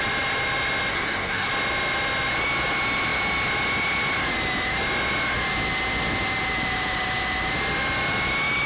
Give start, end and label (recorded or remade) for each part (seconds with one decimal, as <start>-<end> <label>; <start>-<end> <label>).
0.0-0.9 recorded; 0.9-1.5 remade; 1.5-8.7 recorded